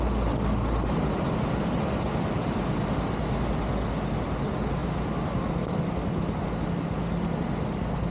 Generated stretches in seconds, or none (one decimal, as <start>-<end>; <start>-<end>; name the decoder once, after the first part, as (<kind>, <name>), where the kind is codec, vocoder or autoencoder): none